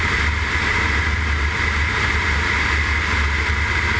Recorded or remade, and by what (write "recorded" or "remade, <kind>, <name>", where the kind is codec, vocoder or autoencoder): recorded